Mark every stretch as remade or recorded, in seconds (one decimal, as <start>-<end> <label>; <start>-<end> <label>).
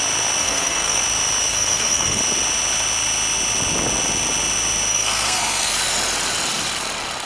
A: 0.0-0.4 recorded; 0.4-1.0 remade; 1.0-1.5 recorded; 1.5-2.2 remade; 2.2-4.9 recorded; 4.9-5.7 remade; 5.7-7.3 recorded